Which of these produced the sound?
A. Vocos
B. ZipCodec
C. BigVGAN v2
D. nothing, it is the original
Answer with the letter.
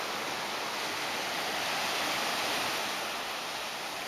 D